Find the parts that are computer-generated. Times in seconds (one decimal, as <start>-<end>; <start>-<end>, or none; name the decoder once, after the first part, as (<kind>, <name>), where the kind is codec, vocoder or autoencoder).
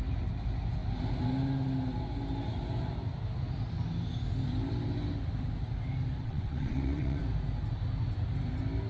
6.2-7.2 (vocoder, WaveNeXt)